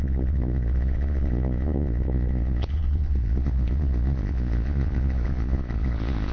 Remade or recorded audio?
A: remade